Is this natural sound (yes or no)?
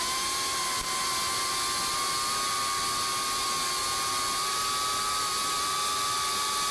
yes